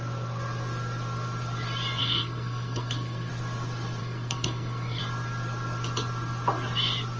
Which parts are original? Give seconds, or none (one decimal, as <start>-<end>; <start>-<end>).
0.0-2.0; 3.3-4.0; 5.0-7.2